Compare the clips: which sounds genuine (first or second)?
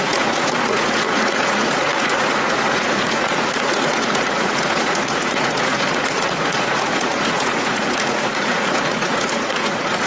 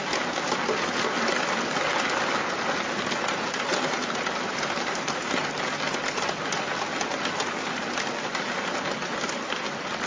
second